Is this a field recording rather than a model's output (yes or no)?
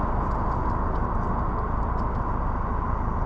yes